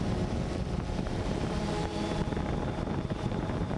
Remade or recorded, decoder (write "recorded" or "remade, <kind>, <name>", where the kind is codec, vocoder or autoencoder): remade, vocoder, BigVGAN v2